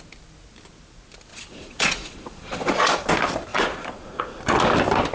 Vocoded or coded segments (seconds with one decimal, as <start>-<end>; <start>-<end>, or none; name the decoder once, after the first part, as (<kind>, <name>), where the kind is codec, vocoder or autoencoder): 1.3-3.1 (vocoder, Vocos); 3.5-4.2